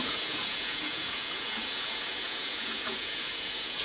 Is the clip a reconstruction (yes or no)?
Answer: yes